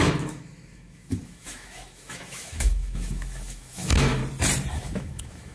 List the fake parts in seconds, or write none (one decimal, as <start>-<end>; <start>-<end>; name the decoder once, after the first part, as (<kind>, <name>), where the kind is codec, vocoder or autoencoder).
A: 0.0-4.2 (autoencoder, DAC-VAE); 4.7-5.5